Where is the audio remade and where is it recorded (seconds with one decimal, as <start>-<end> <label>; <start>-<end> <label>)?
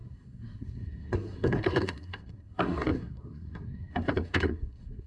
0.0-5.1 remade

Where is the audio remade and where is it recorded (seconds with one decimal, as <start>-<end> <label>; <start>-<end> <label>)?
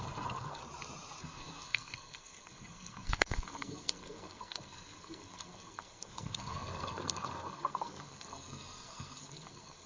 0.0-0.6 remade; 0.6-1.2 recorded; 1.2-9.9 remade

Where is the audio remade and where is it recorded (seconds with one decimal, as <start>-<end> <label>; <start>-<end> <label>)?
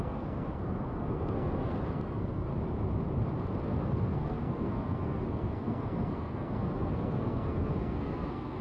0.0-2.5 remade; 2.5-3.6 recorded; 3.6-8.6 remade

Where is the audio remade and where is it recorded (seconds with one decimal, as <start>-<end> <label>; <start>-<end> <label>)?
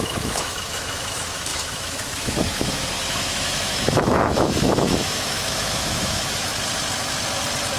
0.0-6.5 remade; 6.5-7.8 recorded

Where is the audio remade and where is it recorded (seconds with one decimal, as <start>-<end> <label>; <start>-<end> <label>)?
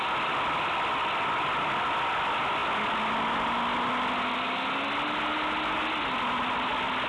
0.0-7.1 recorded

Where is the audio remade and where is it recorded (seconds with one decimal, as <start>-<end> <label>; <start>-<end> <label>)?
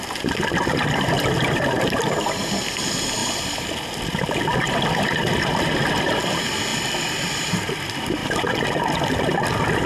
0.0-8.2 remade; 8.2-9.2 recorded; 9.2-9.9 remade